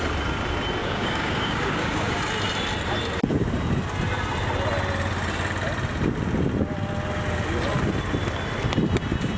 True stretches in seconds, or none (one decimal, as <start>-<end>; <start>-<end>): 0.0-0.8; 2.2-9.4